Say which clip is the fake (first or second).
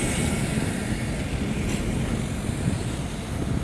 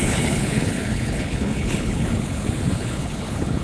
second